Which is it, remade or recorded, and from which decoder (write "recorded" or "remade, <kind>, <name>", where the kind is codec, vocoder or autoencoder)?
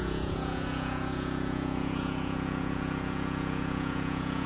remade, vocoder, Vocos